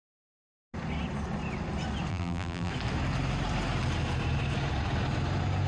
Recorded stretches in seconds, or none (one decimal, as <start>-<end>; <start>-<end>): 0.0-2.1; 2.7-5.7